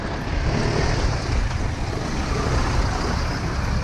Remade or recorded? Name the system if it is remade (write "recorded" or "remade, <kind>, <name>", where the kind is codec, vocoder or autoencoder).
recorded